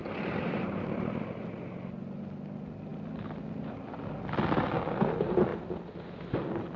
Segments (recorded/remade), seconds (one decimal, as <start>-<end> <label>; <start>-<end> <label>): 0.0-1.2 remade; 1.2-6.8 recorded